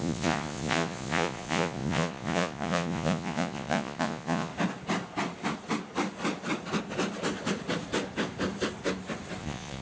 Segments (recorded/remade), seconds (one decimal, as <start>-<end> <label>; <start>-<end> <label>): 0.0-4.5 remade; 4.5-9.4 recorded; 9.4-9.8 remade